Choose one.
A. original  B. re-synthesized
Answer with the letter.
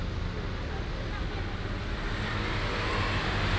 A